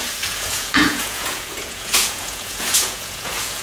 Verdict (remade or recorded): remade